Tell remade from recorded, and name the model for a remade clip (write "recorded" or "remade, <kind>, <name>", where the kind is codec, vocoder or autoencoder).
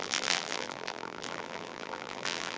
remade, vocoder, BigVGAN v2